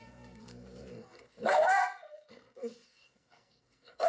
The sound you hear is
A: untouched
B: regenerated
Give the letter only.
B